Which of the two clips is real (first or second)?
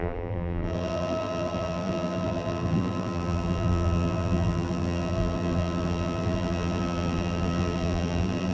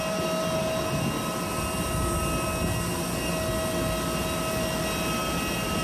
second